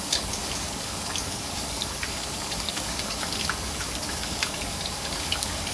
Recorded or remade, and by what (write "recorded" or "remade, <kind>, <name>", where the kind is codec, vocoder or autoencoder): remade, codec, DAC